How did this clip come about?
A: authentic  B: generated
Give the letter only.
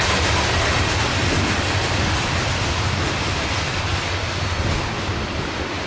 A